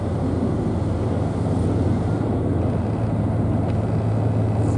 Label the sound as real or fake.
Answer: real